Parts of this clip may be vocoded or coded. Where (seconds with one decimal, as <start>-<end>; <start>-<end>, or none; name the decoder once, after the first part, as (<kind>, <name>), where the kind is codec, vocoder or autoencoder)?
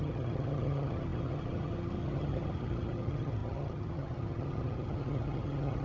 0.0-5.8 (vocoder, HiFi-GAN)